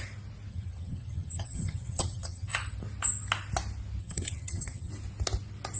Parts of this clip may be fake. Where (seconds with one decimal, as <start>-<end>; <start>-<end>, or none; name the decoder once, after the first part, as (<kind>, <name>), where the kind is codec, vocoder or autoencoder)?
0.5-2.5 (vocoder, HiFi-GAN); 4.0-4.9